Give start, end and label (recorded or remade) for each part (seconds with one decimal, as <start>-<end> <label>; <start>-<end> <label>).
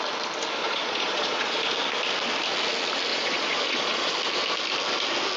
0.0-0.6 recorded; 0.6-1.6 remade; 1.6-3.1 recorded; 3.1-4.1 remade; 4.1-5.4 recorded